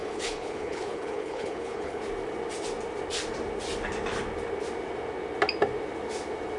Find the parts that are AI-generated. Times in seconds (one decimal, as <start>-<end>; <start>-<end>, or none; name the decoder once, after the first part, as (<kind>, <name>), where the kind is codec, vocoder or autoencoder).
0.0-2.0 (codec, HILCodec)